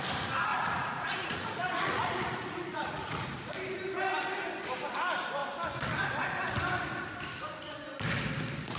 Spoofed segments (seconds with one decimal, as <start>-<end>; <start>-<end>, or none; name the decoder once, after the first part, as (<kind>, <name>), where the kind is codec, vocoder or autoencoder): 0.5-3.3 (vocoder, Vocos)